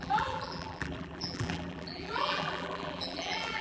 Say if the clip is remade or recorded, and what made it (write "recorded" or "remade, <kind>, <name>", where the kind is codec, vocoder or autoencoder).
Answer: remade, vocoder, BigVGAN v2